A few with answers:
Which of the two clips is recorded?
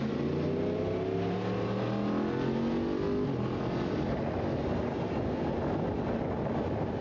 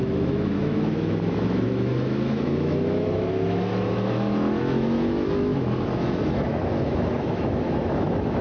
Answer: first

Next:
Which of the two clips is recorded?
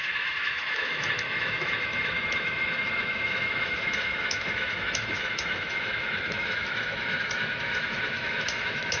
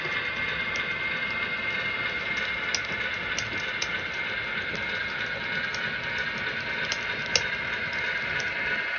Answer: second